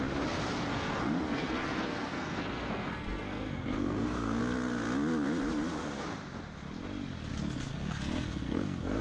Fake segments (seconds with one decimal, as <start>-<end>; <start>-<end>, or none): 0.7-4.4; 7.3-9.0

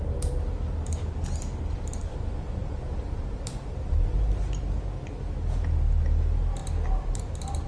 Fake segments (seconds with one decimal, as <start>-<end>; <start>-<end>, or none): 2.1-3.7

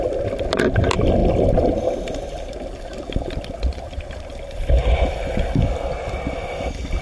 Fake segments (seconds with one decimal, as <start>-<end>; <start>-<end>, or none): 3.7-4.3

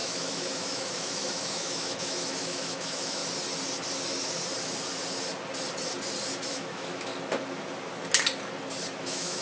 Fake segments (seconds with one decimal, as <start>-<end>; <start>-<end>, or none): 0.0-3.2; 6.5-7.1; 9.0-9.4

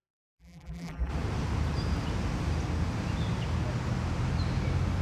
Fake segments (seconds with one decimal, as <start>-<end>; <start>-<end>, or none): 0.0-1.1

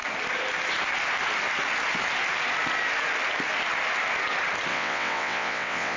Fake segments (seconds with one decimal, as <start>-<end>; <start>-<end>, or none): 4.7-6.0